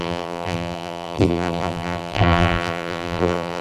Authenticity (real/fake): fake